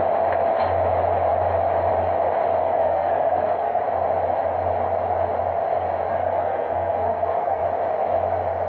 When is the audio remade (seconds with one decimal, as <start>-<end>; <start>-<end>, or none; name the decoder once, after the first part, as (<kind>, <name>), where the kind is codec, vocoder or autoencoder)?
2.6-3.8 (codec, SNAC); 6.1-7.6